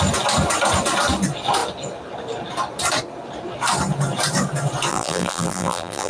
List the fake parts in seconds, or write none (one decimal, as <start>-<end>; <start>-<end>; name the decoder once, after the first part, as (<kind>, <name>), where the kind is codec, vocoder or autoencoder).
4.9-6.1 (vocoder, BigVGAN v2)